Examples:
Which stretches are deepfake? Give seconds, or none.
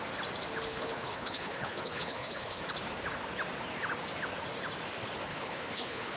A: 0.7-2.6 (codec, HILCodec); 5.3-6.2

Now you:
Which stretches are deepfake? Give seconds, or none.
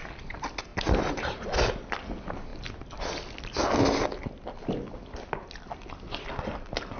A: none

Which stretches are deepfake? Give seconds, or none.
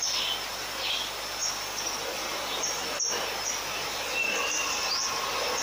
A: none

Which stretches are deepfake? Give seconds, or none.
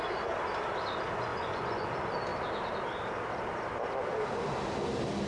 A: 1.3-1.9 (vocoder, Vocos)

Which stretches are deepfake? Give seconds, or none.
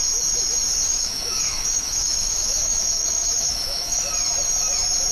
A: 0.9-4.0 (autoencoder, DAC-VAE)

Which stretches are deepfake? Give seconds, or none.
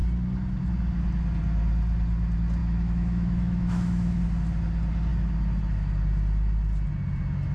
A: 2.6-4.2 (autoencoder, DAC-VAE)